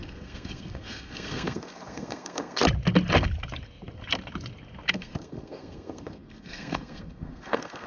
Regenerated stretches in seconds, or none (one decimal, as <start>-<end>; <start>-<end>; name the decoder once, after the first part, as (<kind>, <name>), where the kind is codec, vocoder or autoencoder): 0.0-2.6 (codec, SNAC); 4.9-7.9